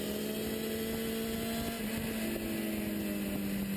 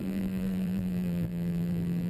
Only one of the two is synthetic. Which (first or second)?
second